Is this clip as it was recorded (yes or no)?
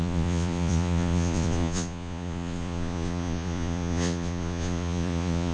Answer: no